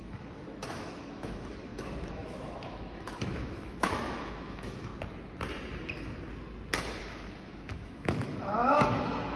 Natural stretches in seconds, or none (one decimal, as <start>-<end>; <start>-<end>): 4.9-7.0